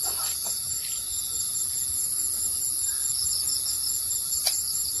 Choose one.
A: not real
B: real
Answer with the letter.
B